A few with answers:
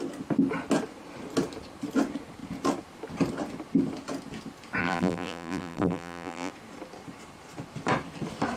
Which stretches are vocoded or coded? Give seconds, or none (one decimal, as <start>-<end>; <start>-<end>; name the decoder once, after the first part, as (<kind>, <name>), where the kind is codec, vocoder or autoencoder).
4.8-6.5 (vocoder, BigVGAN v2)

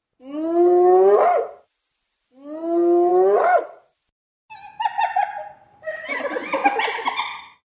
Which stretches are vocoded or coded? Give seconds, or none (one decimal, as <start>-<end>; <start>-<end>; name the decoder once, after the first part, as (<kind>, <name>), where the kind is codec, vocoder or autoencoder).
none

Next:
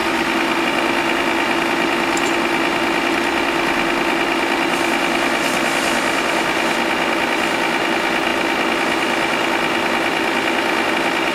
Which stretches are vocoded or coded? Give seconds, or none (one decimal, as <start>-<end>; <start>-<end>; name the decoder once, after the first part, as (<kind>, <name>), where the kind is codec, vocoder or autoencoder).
none

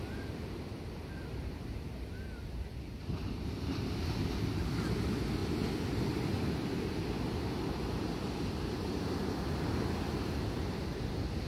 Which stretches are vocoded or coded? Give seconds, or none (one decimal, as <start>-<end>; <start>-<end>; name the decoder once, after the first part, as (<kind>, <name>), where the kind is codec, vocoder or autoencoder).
none

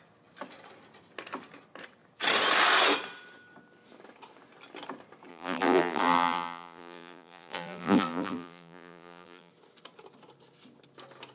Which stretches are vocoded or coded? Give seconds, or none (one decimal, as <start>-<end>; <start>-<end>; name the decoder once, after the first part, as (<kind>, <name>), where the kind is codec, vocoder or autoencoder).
5.3-9.5 (vocoder, BigVGAN v2)